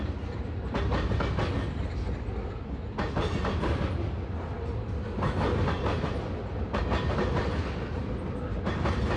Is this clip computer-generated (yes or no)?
no